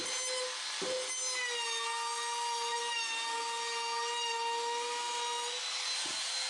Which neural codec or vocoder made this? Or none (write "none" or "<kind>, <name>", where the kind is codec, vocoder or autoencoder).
none